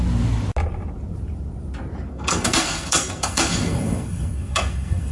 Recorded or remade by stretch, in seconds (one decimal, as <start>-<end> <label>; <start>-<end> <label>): 0.0-2.1 recorded; 2.1-5.1 remade